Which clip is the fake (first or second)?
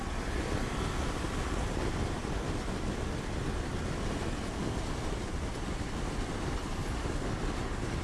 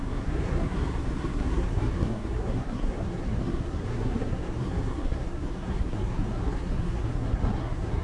second